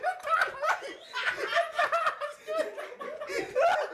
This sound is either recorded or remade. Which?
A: recorded